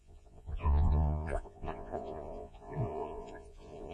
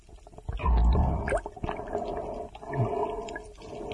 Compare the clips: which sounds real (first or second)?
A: second